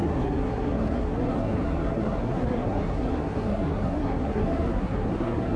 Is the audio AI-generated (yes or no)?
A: yes